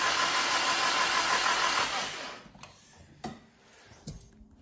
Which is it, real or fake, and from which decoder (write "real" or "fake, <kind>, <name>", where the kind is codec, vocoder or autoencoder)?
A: real